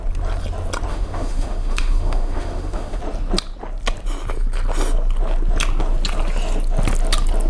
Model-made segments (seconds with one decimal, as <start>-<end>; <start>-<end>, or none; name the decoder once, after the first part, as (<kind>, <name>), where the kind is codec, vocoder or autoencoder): 0.9-3.0 (autoencoder, DAC-VAE)